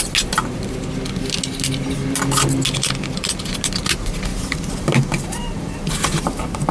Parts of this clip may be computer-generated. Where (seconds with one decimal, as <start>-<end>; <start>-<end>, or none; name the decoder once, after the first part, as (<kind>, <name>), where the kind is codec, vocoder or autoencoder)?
4.3-6.7 (vocoder, BigVGAN v2)

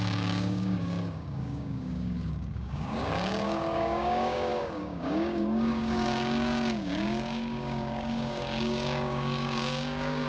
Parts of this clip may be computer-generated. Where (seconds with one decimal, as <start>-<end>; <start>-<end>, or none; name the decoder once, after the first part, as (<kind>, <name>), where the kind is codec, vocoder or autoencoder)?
0.0-10.3 (codec, DAC)

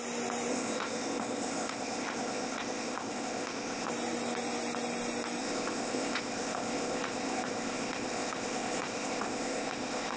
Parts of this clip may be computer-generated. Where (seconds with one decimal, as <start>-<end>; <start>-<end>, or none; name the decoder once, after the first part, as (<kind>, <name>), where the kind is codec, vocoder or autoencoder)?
0.5-3.9 (codec, ZipCodec); 5.4-10.2

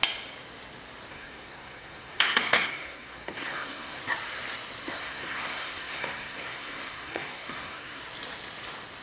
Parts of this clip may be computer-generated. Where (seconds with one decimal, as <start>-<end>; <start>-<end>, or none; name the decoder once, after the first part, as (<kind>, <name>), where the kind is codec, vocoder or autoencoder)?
1.1-4.0 (codec, SNAC); 4.8-8.0